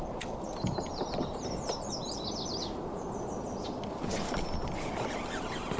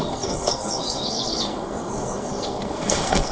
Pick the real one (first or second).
first